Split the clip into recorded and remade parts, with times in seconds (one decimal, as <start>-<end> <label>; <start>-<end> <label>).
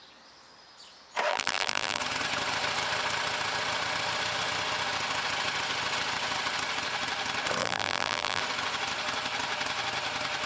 0.0-1.3 recorded; 1.3-2.0 remade; 2.0-7.6 recorded; 7.6-8.4 remade; 8.4-10.5 recorded